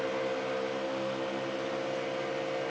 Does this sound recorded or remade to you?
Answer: recorded